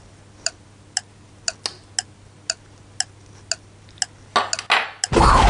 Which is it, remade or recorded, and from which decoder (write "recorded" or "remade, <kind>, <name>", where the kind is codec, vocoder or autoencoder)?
recorded